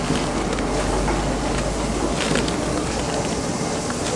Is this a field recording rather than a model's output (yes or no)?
yes